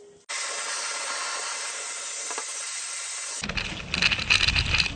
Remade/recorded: recorded